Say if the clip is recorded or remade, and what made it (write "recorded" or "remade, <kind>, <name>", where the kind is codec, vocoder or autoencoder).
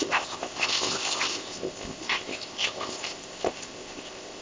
remade, codec, ZipCodec